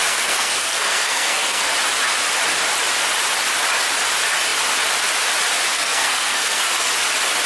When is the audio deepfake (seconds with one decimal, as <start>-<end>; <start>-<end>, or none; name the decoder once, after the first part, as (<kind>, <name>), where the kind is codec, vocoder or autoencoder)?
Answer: 0.0-1.7 (codec, SNAC); 5.7-6.9